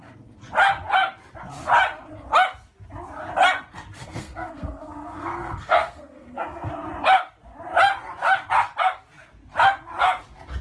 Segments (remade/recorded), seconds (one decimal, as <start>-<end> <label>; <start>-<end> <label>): 0.0-4.0 recorded; 4.0-6.7 remade; 6.7-10.6 recorded